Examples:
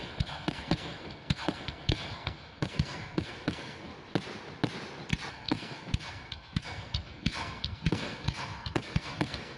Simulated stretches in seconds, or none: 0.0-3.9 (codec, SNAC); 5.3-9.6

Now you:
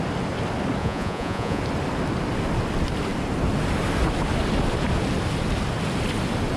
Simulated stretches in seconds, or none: 0.8-1.6 (vocoder, Vocos)

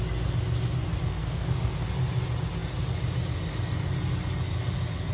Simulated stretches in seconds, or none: 1.1-1.9 (codec, SNAC)

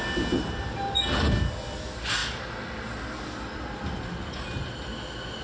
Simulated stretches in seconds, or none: none

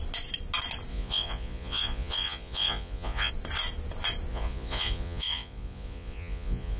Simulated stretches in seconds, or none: 0.9-3.3 (vocoder, Vocos); 4.3-6.8